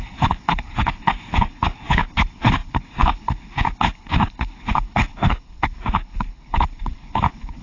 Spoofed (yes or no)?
yes